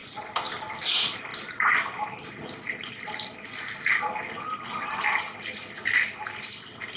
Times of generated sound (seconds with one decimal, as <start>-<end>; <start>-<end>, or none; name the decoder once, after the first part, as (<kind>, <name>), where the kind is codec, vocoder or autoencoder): 0.0-0.8 (vocoder, BigVGAN v2)